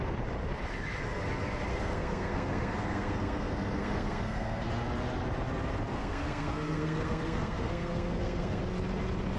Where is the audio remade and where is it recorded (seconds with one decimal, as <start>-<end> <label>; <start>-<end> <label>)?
0.0-1.7 recorded; 1.7-4.7 remade; 4.7-5.9 recorded; 5.9-8.6 remade; 8.6-9.4 recorded